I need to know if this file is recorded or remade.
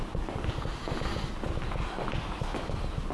recorded